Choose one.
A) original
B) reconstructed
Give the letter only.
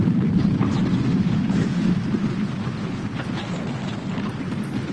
A